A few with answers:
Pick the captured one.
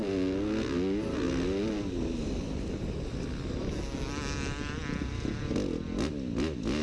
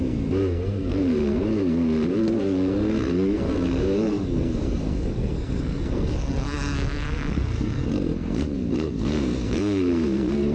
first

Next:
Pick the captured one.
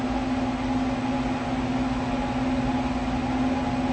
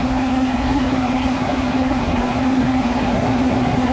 first